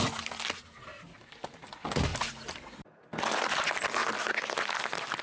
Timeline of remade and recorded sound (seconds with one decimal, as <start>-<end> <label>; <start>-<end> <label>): 0.0-5.2 recorded